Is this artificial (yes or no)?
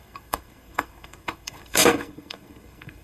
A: yes